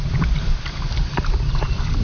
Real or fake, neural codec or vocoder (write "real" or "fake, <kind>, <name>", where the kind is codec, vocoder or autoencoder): fake, vocoder, BigVGAN v2